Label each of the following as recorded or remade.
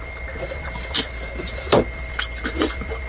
remade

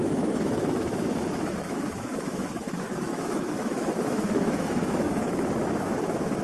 remade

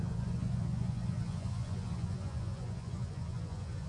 remade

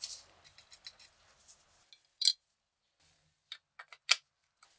recorded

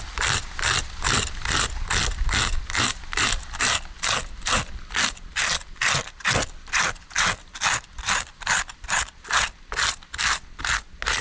recorded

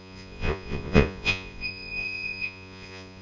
remade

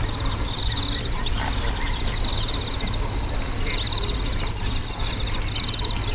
recorded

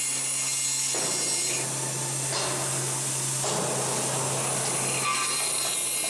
recorded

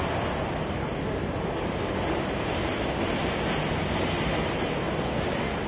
recorded